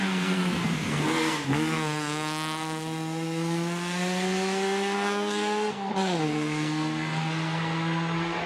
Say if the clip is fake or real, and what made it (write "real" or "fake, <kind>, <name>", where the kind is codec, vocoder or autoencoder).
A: fake, codec, SNAC